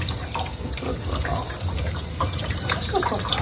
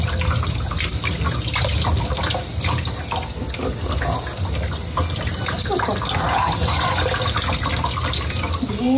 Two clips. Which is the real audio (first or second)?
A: second